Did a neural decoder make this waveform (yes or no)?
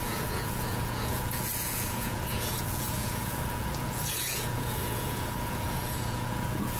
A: yes